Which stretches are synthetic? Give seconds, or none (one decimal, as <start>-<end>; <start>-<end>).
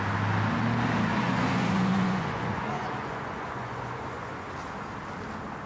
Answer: 1.1-4.5